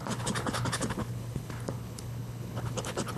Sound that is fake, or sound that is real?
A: fake